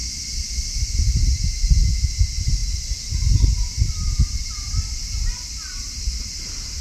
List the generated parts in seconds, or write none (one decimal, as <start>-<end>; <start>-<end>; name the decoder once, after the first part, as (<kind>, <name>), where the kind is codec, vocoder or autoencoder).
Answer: none